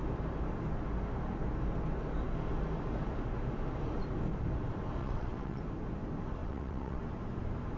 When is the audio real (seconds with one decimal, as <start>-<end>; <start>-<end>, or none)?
0.0-5.0; 5.6-6.4; 7.0-7.8